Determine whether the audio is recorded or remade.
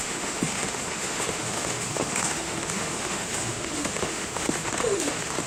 remade